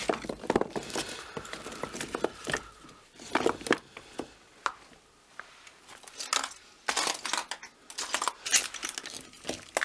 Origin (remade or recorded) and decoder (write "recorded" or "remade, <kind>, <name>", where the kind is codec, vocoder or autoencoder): recorded